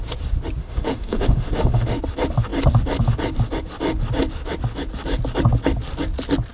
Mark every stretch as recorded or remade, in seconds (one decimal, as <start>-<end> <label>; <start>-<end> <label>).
0.0-0.6 recorded; 0.6-2.0 remade; 2.0-6.5 recorded